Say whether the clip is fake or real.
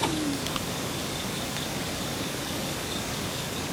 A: fake